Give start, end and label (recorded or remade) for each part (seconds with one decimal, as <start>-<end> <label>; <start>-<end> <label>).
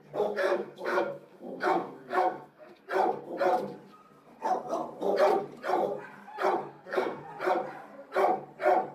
0.0-0.4 recorded; 0.4-2.8 remade; 2.8-6.7 recorded; 6.7-7.3 remade; 7.3-8.9 recorded